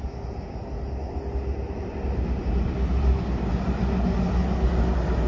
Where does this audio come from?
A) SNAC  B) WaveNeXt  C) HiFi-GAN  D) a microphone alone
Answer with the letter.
D